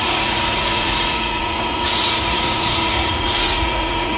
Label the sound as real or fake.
fake